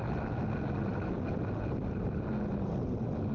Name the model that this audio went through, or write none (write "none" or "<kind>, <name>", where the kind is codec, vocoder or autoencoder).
none